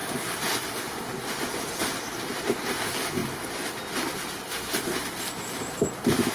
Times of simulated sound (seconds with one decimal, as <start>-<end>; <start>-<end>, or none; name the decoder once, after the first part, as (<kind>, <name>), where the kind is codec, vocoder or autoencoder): 0.0-2.0 (vocoder, BigVGAN v2)